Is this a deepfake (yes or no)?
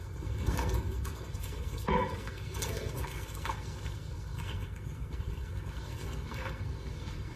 yes